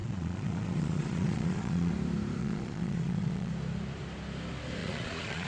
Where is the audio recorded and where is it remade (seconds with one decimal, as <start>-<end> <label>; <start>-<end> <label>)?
0.0-1.9 remade; 1.9-2.4 recorded; 2.4-3.5 remade; 3.5-4.8 recorded; 4.8-5.5 remade